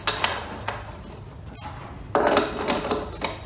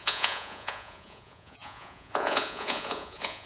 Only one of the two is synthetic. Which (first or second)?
second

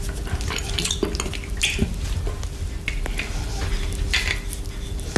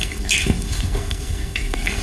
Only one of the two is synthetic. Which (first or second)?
second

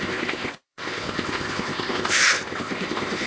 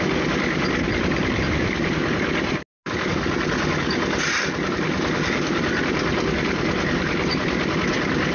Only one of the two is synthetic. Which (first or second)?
first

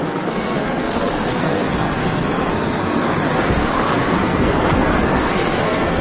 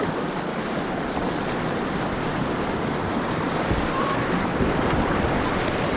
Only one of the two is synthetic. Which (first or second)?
first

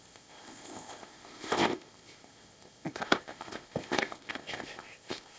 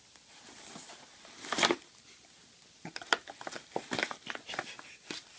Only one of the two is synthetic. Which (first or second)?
first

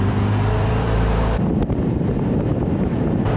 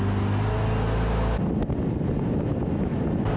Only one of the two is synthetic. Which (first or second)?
first